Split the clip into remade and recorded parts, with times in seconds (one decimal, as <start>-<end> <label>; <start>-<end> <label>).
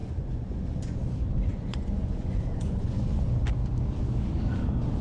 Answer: 0.0-1.0 remade; 1.0-1.5 recorded; 1.5-3.0 remade; 3.0-5.0 recorded